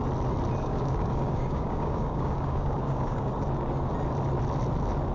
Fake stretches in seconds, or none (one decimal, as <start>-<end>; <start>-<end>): 0.6-3.3